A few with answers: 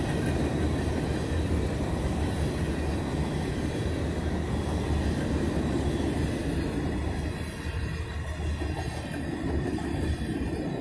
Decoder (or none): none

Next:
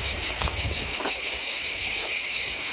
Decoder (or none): codec, DAC